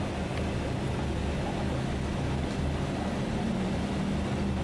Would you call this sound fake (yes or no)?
no